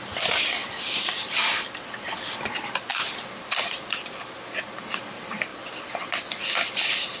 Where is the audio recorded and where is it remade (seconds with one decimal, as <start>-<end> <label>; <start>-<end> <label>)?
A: 0.0-7.2 recorded